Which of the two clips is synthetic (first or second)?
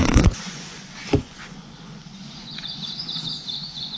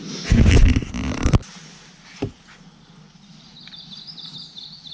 first